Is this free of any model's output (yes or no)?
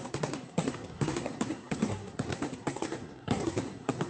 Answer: no